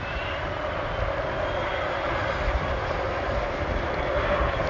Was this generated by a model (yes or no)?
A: no